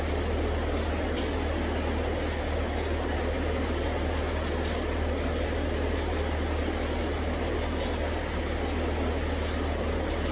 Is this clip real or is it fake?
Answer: real